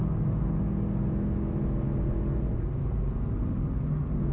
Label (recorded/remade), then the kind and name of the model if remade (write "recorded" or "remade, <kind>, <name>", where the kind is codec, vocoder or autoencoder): recorded